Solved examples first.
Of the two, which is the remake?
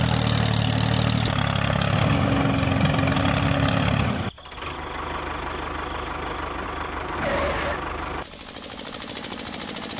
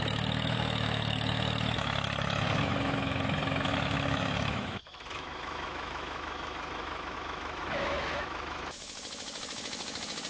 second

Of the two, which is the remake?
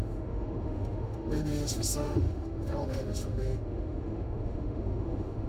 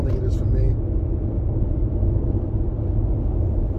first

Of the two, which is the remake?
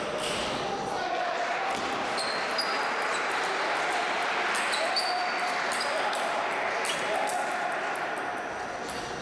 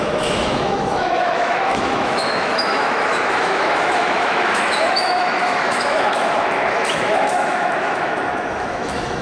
second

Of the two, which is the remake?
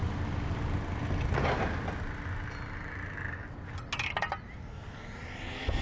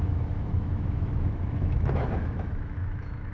second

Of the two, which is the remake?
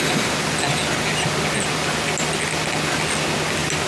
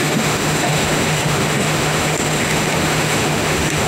second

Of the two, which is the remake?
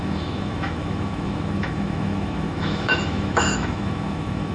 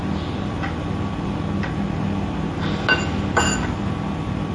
first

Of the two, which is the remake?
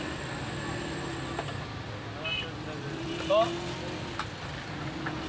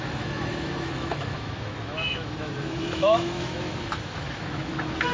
second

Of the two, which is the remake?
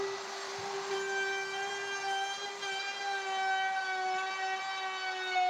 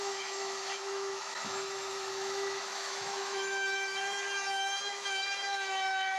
second